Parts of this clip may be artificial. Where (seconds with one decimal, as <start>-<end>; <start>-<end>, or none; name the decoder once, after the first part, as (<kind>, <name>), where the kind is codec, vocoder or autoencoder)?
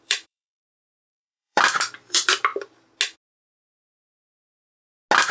0.0-2.5 (vocoder, BigVGAN v2)